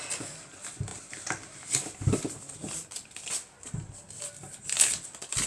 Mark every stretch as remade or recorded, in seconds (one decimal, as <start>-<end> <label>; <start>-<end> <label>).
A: 0.0-5.5 recorded